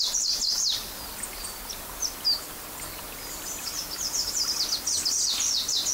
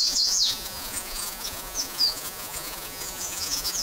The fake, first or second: second